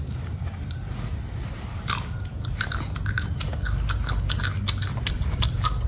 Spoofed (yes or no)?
no